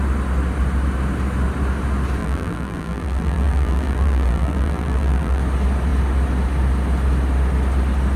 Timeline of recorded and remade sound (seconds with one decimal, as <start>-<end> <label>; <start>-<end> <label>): 0.0-2.2 recorded; 2.2-5.4 remade; 5.4-8.2 recorded